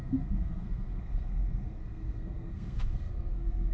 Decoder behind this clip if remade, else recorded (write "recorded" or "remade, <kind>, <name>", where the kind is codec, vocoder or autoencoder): remade, codec, SNAC